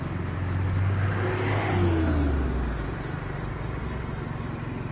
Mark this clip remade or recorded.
recorded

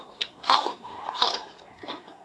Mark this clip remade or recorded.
remade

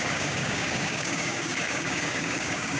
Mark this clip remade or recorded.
remade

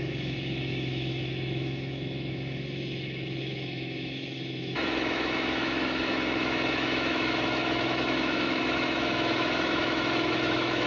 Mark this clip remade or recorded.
remade